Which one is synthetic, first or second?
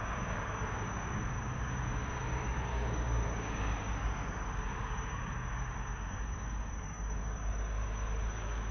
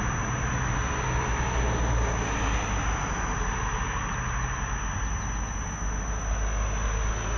first